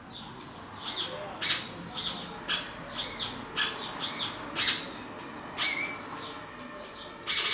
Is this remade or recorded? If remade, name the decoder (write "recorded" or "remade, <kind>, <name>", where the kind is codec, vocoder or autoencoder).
recorded